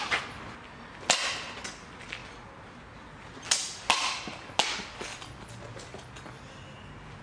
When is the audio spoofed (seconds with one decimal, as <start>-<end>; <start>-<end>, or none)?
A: none